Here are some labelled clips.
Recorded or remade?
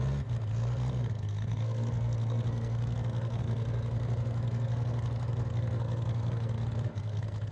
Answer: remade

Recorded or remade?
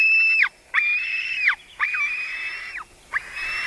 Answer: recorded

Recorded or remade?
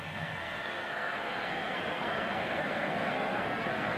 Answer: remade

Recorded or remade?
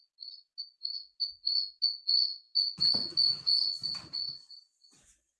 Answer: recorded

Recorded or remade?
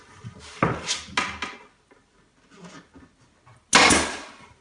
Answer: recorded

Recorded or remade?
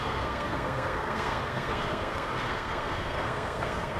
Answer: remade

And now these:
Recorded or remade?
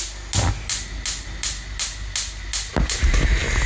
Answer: recorded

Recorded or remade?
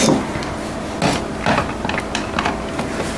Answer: recorded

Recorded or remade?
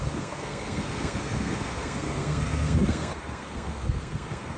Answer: remade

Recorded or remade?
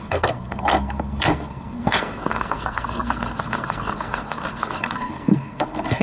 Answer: remade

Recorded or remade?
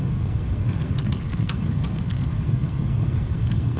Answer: remade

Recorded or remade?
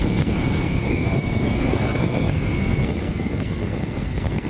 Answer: remade